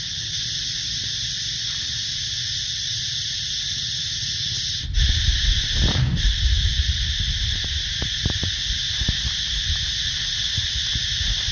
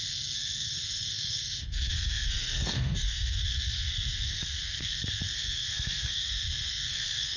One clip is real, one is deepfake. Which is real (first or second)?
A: first